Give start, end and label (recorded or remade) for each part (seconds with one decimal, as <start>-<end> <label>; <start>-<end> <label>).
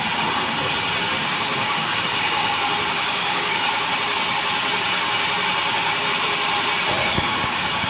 0.0-1.5 recorded; 1.5-2.6 remade; 2.6-3.1 recorded; 3.1-3.7 remade; 3.7-7.0 recorded; 7.0-7.9 remade